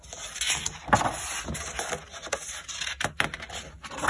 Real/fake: real